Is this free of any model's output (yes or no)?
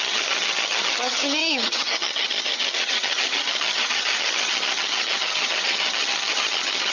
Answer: no